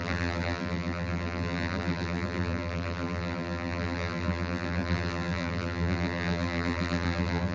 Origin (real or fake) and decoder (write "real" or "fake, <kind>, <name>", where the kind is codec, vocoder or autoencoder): fake, vocoder, BigVGAN v2